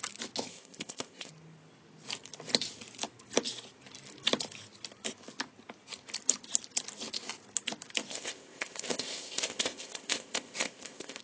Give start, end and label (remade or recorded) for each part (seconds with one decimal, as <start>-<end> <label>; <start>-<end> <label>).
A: 0.0-0.5 recorded; 0.5-1.3 remade; 1.3-8.1 recorded; 8.1-11.2 remade